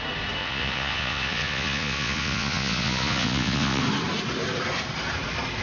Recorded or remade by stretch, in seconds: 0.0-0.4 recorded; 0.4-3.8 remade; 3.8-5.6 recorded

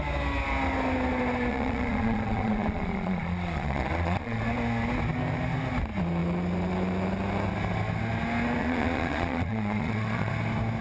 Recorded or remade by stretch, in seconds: 0.0-1.5 recorded; 1.5-4.4 remade; 4.4-8.6 recorded; 8.6-10.3 remade; 10.3-10.8 recorded